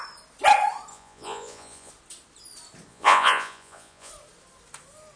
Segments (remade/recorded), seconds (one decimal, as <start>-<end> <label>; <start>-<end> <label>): 0.0-0.9 recorded; 0.9-1.9 remade; 1.9-2.9 recorded; 2.9-4.1 remade; 4.1-5.2 recorded